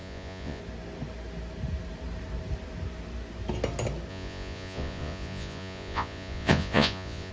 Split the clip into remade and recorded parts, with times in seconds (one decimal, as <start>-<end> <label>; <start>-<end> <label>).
0.0-0.6 remade; 0.6-4.1 recorded; 4.1-7.3 remade